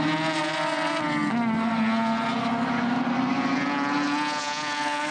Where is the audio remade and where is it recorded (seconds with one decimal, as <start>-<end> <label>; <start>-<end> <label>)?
0.0-5.1 recorded